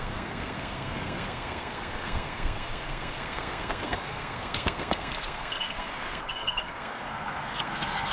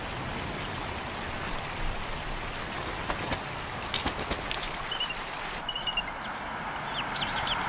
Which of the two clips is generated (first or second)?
first